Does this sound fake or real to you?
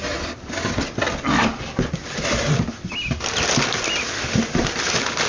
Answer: real